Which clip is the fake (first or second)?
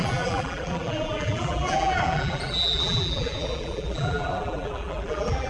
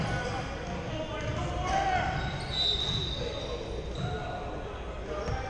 first